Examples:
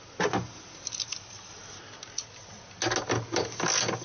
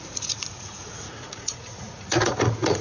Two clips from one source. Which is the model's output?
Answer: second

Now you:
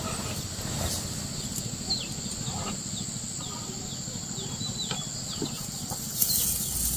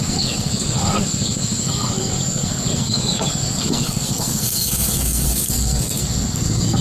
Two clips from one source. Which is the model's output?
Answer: second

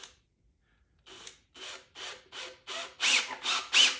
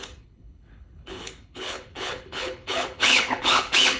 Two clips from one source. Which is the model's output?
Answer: second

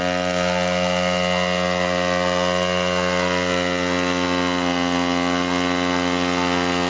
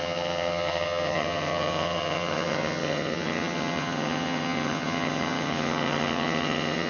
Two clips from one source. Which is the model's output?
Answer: second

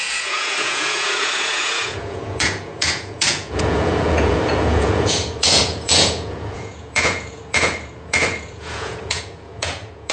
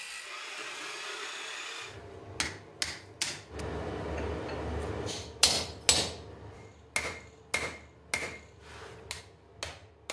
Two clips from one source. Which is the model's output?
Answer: first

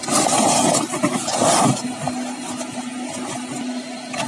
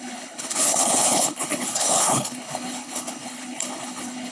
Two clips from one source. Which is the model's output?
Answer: second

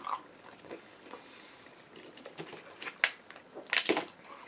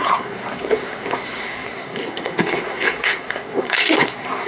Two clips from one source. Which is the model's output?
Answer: second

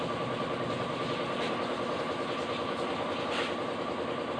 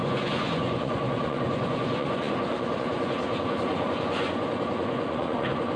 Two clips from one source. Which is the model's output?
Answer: second